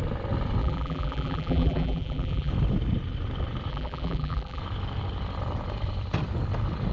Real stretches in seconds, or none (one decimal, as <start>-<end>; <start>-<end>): 0.0-0.6; 2.5-3.7; 4.6-6.9